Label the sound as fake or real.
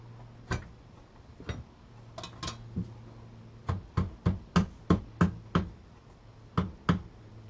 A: real